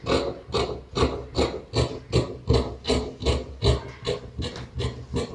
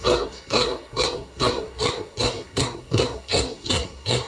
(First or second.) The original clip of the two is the first